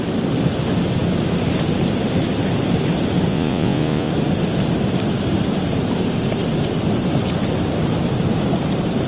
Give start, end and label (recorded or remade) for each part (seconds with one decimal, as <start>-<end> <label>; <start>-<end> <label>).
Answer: 0.0-3.3 recorded; 3.3-4.1 remade; 4.1-9.1 recorded